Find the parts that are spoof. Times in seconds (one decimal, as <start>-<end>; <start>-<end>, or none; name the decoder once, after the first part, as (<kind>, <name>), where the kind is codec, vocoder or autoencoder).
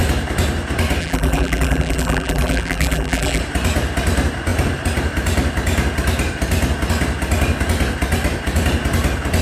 1.0-3.4 (vocoder, BigVGAN v2)